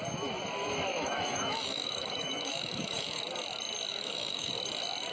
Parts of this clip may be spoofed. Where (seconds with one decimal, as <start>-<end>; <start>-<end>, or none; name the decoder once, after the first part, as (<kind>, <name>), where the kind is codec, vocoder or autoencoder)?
0.9-3.2 (autoencoder, DAC-VAE); 3.9-4.5